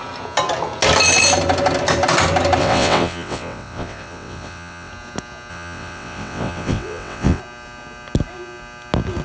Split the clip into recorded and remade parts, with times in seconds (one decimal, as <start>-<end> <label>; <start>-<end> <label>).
0.0-2.6 recorded; 2.6-4.9 remade; 4.9-5.5 recorded; 5.5-7.4 remade; 7.4-9.2 recorded